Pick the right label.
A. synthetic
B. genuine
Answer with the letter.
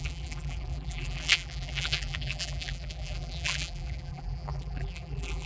A